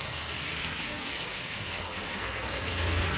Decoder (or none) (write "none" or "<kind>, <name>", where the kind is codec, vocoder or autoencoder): codec, SNAC